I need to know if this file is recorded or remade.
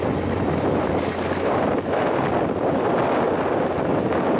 recorded